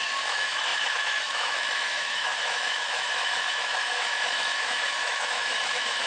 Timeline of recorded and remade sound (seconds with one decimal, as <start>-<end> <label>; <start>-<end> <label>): 0.0-6.1 remade